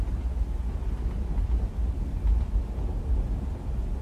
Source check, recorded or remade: recorded